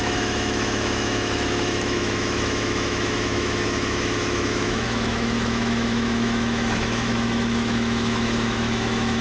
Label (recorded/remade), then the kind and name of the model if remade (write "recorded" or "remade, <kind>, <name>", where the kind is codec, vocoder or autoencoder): remade, autoencoder, DAC-VAE